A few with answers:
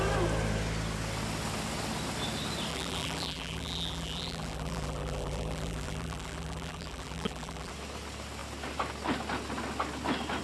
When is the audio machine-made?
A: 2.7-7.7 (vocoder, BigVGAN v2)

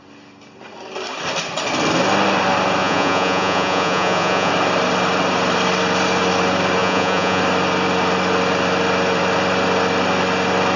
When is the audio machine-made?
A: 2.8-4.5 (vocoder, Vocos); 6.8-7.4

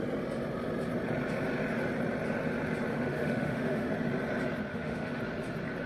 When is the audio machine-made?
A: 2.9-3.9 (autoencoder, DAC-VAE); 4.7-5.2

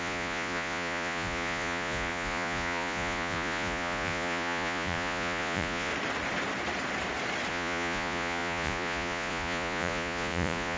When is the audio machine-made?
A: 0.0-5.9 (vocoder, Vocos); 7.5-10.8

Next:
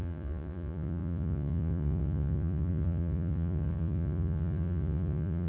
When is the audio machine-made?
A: 0.0-5.5 (vocoder, Vocos)

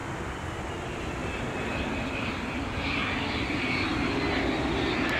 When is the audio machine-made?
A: none

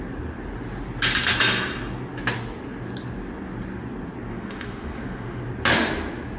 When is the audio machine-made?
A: 4.3-5.4 (autoencoder, DAC-VAE)